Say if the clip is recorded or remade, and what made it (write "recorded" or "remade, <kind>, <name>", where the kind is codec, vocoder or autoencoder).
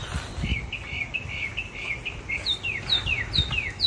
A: recorded